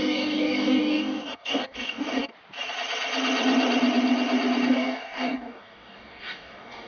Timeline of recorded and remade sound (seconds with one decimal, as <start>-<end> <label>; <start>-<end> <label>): 0.0-2.3 remade; 2.3-4.7 recorded; 4.7-6.9 remade